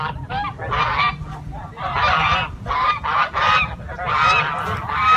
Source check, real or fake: real